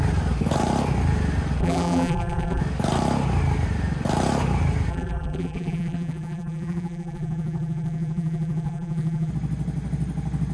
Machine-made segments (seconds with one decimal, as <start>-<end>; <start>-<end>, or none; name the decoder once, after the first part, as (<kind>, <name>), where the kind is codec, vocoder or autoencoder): 1.6-2.6 (vocoder, BigVGAN v2); 4.9-9.3